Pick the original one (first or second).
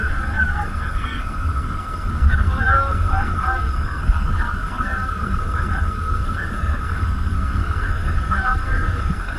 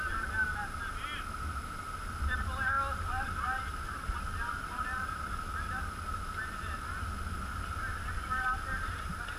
second